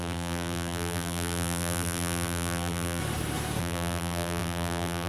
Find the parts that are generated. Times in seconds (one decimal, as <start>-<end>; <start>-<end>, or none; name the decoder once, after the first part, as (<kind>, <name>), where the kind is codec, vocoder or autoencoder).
0.0-3.0 (vocoder, BigVGAN v2); 3.6-5.1